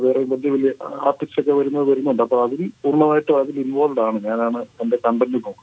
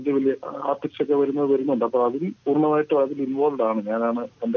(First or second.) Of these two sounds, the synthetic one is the first